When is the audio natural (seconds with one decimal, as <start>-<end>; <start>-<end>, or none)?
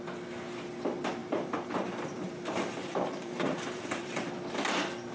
0.0-1.2; 4.3-5.1